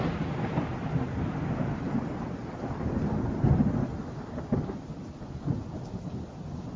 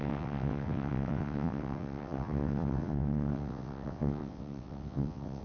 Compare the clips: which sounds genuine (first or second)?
first